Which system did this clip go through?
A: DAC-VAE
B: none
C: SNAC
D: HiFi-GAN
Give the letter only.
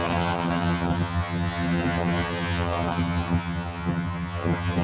D